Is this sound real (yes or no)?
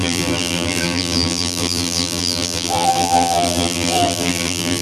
no